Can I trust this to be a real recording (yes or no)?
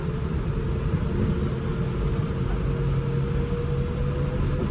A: yes